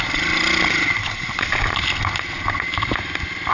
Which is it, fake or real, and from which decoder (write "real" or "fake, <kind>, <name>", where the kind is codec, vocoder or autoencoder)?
real